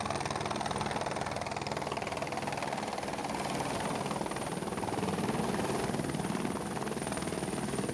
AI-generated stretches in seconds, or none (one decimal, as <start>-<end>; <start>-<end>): none

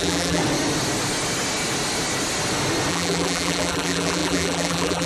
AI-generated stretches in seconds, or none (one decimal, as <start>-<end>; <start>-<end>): 0.0-0.4; 2.9-5.1

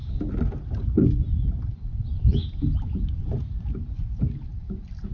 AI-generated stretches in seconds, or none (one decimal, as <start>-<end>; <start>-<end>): 0.0-2.3; 4.6-5.1

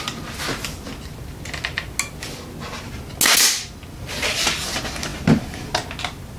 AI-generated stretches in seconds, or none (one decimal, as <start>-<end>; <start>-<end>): none

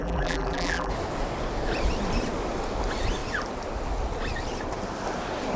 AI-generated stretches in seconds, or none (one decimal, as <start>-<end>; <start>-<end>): 0.0-0.9

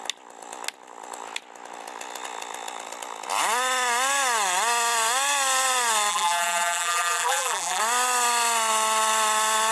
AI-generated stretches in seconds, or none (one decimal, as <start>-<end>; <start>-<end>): 6.1-7.8